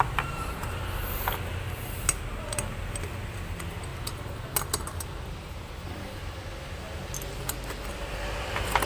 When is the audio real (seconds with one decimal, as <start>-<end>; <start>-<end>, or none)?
0.0-8.9